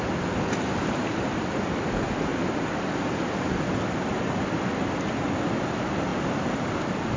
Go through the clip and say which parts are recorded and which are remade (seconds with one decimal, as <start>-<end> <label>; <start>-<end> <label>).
0.0-7.2 recorded